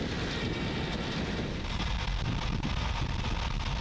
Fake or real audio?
real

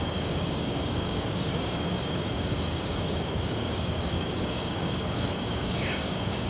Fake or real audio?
fake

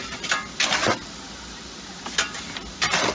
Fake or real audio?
real